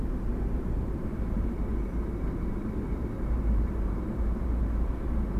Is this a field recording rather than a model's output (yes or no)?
no